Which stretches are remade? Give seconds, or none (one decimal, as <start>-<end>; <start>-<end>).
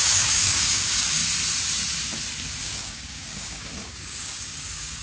0.0-1.2; 2.6-5.0